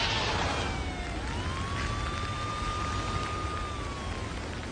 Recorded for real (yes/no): yes